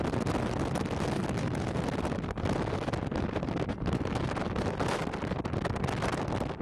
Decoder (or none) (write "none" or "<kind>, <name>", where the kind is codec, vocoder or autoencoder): none